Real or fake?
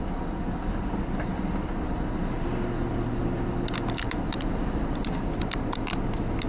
real